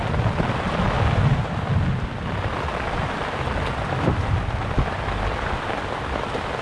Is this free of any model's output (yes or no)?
yes